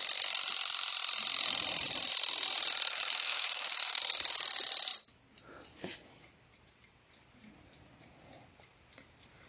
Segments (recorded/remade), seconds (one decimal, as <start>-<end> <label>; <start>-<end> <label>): 0.0-2.9 recorded; 2.9-4.0 remade; 4.0-9.5 recorded